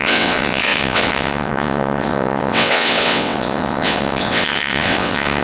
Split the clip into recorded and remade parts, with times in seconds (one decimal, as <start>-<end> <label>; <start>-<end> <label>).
0.0-5.4 remade